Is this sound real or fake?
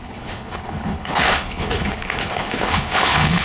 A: fake